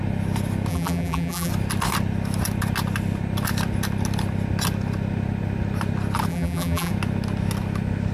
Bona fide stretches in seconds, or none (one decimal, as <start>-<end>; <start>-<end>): 0.0-0.7; 1.5-6.3; 6.9-8.1